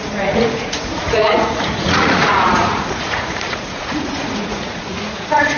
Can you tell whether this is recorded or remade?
remade